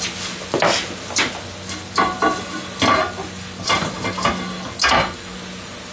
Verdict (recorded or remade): recorded